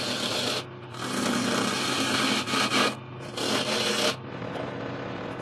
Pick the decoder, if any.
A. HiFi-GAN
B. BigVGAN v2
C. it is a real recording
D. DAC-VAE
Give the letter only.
C